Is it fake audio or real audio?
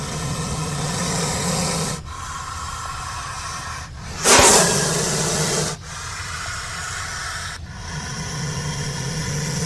real